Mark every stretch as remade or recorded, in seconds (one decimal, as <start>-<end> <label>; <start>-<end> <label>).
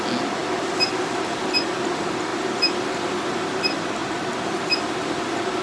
0.0-2.3 recorded; 2.3-3.3 remade; 3.3-4.0 recorded; 4.0-4.8 remade; 4.8-5.6 recorded